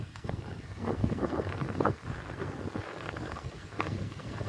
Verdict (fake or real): fake